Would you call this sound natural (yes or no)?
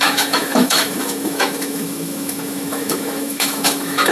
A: no